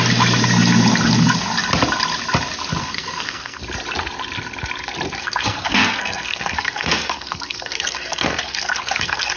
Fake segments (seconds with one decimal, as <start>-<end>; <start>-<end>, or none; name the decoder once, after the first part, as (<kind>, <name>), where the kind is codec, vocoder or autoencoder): 2.8-3.6 (codec, SNAC); 5.2-9.4